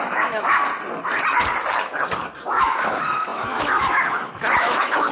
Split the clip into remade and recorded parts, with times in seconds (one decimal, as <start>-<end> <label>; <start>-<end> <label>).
0.0-0.7 remade; 0.7-2.5 recorded; 2.5-5.1 remade

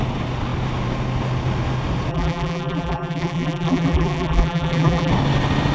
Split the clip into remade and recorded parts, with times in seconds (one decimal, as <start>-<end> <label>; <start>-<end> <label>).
0.0-2.1 recorded; 2.1-5.1 remade; 5.1-5.7 recorded